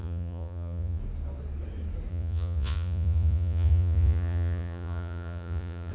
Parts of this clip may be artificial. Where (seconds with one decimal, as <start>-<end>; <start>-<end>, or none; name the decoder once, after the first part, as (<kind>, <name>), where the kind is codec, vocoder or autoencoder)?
0.0-1.0 (vocoder, Vocos); 2.1-5.9